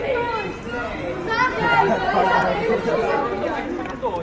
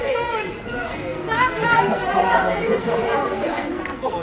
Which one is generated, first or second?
second